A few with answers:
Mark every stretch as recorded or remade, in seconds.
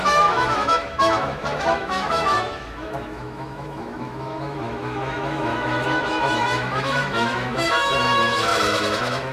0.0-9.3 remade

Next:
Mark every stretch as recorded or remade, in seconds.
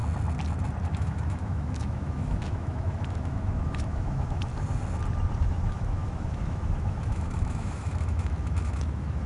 0.0-0.8 recorded; 0.8-4.5 remade; 4.5-5.4 recorded; 5.4-9.3 remade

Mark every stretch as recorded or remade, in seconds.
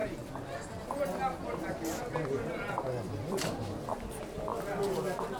0.0-5.4 recorded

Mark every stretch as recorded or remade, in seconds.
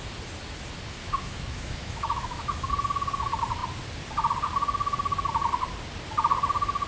0.0-1.0 recorded; 1.0-2.7 remade; 2.7-6.9 recorded